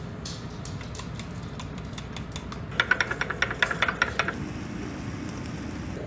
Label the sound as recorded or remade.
recorded